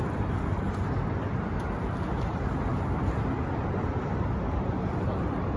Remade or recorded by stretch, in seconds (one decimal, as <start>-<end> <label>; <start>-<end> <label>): 0.0-5.6 recorded